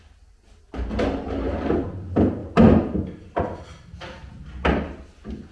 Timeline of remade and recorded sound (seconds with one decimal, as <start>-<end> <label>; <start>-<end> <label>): 0.0-5.5 recorded